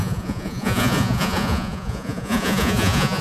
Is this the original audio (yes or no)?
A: no